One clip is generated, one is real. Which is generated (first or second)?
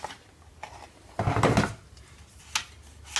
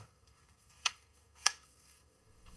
second